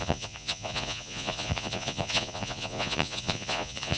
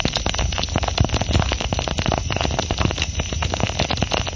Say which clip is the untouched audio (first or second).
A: second